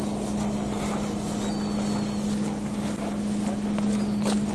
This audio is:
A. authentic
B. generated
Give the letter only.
A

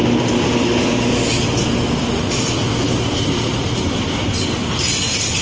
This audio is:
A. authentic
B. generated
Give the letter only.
A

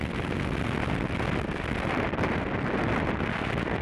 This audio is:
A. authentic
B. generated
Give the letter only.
A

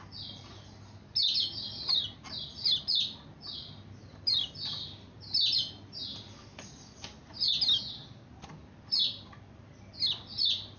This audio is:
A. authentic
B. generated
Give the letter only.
A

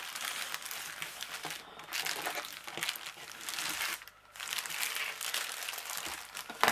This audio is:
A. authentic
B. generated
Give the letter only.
A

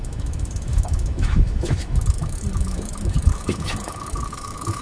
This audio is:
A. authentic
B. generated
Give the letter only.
B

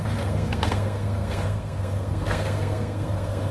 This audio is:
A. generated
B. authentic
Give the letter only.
A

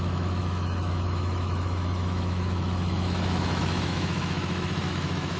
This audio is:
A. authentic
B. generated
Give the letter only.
B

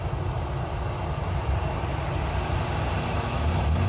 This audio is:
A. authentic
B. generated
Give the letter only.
A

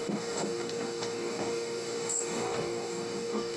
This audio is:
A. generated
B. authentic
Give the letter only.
A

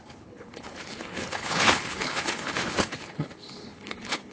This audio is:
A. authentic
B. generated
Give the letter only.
B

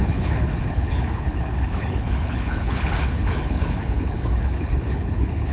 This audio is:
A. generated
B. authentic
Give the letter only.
A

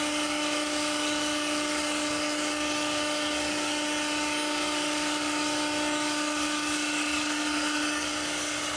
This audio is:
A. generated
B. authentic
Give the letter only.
A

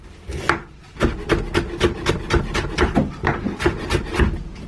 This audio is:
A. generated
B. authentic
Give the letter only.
B